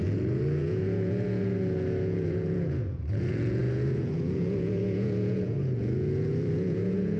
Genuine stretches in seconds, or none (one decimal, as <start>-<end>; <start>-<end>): none